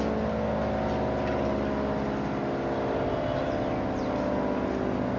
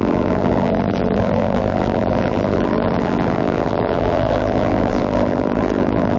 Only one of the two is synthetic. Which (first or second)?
second